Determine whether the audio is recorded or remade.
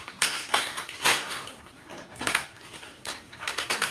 remade